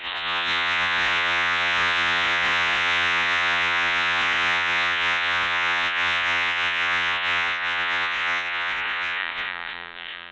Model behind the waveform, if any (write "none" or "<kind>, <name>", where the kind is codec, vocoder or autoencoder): vocoder, Vocos